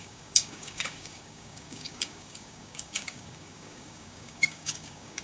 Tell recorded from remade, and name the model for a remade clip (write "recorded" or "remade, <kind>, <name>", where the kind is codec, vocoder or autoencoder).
remade, codec, DAC